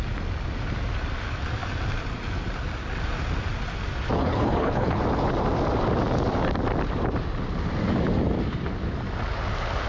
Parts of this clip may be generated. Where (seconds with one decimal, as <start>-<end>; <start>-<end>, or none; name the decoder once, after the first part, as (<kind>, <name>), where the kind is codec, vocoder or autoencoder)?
4.2-5.0 (codec, HILCodec)